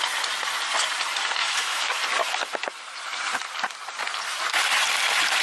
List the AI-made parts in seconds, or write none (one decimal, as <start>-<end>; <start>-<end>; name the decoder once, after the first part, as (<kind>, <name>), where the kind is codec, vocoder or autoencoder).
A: 1.4-1.9 (autoencoder, DAC-VAE)